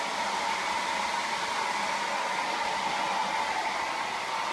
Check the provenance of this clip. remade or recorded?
recorded